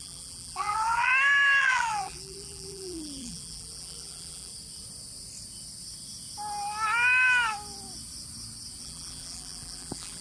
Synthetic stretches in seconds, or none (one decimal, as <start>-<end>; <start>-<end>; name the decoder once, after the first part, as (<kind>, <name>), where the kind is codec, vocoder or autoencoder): 0.0-1.1 (vocoder, BigVGAN v2); 1.6-4.5; 8.8-10.2